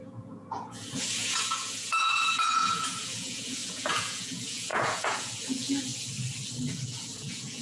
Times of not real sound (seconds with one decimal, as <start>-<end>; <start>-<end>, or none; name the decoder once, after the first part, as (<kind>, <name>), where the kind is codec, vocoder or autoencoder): 0.0-5.9 (vocoder, Vocos); 6.7-7.6